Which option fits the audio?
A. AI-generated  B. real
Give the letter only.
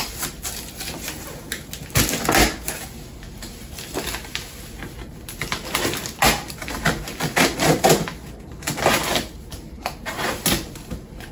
B